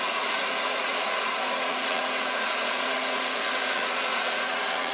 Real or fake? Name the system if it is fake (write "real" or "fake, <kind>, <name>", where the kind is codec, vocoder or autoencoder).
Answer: fake, vocoder, Vocos